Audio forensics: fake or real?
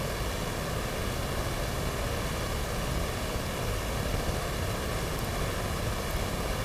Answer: real